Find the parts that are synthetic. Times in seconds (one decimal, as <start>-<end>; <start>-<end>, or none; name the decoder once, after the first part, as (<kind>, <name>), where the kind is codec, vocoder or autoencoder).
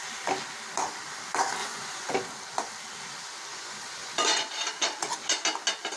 1.6-2.1 (vocoder, Vocos); 3.5-4.5